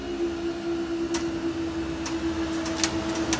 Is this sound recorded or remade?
recorded